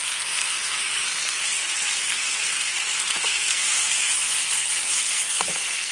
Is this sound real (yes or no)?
no